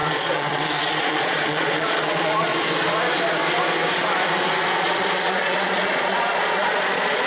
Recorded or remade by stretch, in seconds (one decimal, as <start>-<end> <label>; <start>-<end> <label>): 0.0-2.5 remade; 2.5-4.7 recorded; 4.7-7.3 remade